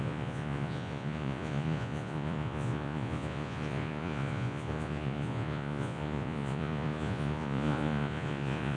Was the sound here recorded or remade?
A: remade